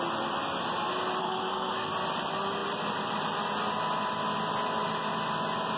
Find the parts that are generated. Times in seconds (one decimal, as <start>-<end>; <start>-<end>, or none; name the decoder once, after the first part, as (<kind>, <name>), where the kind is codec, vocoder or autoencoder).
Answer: 1.2-1.9 (codec, SNAC)